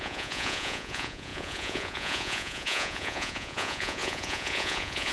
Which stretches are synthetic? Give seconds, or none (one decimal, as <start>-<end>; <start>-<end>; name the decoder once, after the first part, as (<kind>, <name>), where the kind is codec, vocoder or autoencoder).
0.0-5.1 (vocoder, Vocos)